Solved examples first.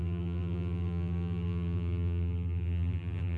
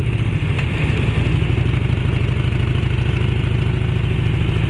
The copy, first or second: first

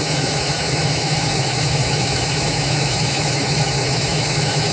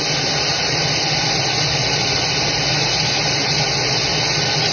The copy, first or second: first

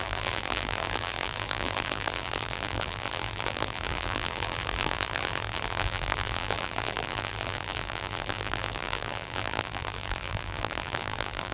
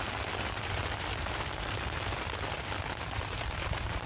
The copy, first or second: first